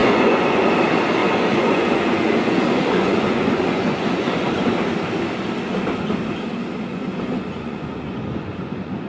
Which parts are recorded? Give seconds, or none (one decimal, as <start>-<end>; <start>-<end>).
0.7-1.2; 4.5-6.9